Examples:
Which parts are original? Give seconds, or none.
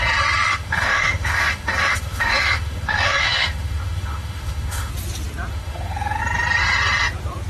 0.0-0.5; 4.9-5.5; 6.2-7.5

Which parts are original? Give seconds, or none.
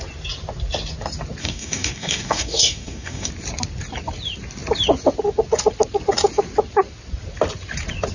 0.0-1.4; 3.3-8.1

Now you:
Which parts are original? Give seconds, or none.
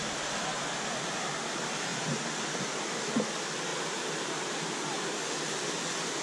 0.0-6.2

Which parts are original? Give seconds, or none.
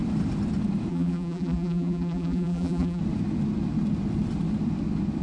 0.0-0.9; 3.0-5.2